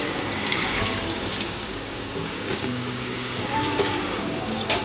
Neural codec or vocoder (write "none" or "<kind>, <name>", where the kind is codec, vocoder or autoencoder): codec, DAC